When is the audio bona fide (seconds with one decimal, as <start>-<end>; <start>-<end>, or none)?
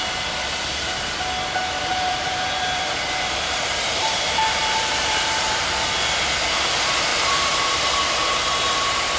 0.0-1.9; 5.7-7.1